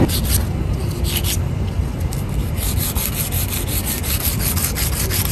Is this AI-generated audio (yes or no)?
no